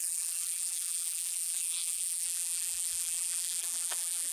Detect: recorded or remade remade